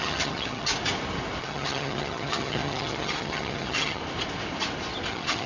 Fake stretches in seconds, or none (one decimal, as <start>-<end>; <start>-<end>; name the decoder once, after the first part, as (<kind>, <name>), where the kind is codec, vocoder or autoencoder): 0.0-0.7 (vocoder, HiFi-GAN); 1.4-4.0; 5.1-5.5